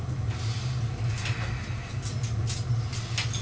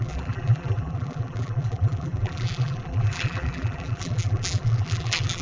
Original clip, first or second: first